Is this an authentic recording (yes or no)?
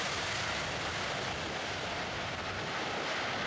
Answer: yes